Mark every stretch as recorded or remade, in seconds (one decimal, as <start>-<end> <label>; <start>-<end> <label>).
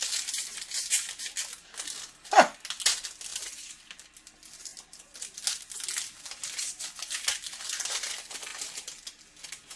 0.0-3.3 recorded; 3.3-4.1 remade; 4.1-4.7 recorded; 4.7-7.6 remade; 7.6-8.5 recorded; 8.5-9.4 remade; 9.4-9.8 recorded